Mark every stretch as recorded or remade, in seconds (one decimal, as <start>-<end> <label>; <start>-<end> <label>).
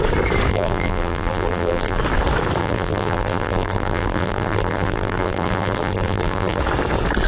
0.0-0.5 recorded; 0.5-2.0 remade; 2.0-2.6 recorded; 2.6-6.6 remade; 6.6-7.3 recorded